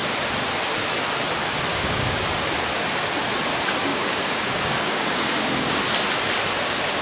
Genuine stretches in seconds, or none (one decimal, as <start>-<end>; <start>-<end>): 0.0-1.7; 2.2-3.9; 5.8-7.0